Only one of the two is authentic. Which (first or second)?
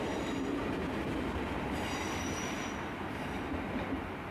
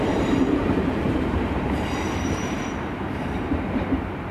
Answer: first